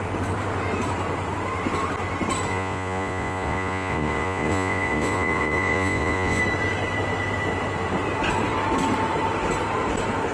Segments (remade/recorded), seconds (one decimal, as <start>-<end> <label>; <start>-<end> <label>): 0.0-2.5 recorded; 2.5-6.4 remade; 6.4-10.3 recorded